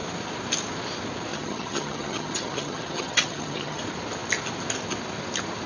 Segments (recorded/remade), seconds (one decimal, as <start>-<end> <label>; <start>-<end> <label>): 0.0-1.3 recorded; 1.3-3.8 remade; 3.8-5.7 recorded